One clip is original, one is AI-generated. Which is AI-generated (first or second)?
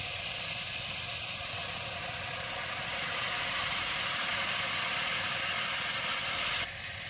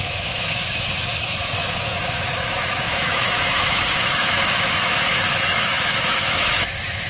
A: second